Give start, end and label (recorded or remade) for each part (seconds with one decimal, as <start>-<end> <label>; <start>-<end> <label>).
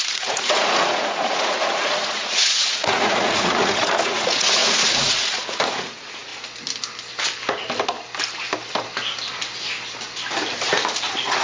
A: 0.0-6.3 remade; 6.3-11.0 recorded; 11.0-11.4 remade